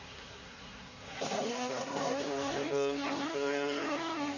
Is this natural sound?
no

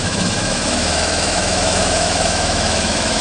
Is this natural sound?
no